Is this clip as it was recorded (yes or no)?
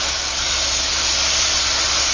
yes